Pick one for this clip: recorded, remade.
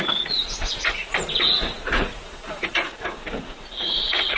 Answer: remade